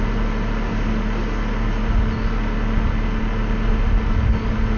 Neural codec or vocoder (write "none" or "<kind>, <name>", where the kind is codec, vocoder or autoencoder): none